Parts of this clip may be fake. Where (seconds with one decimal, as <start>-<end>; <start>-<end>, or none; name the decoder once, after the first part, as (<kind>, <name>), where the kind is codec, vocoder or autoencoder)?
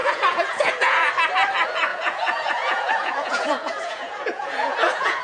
0.0-1.1 (vocoder, Vocos); 1.9-5.2